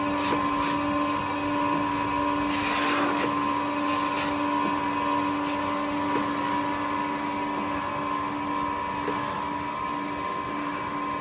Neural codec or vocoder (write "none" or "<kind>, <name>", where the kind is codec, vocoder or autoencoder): none